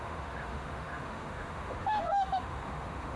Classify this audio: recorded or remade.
remade